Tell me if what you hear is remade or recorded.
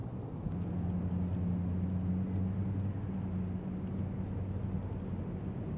recorded